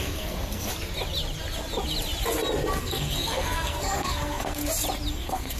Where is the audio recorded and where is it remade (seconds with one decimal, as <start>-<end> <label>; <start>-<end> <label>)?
0.0-0.7 remade; 0.7-2.8 recorded; 2.8-4.6 remade; 4.6-5.1 recorded; 5.1-5.6 remade